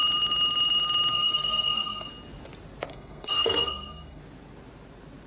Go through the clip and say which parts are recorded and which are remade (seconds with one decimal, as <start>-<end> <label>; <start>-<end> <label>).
0.0-1.1 recorded; 1.1-2.1 remade; 2.1-2.9 recorded; 2.9-4.2 remade; 4.2-5.3 recorded